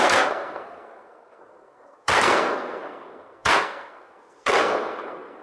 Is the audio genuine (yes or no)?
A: no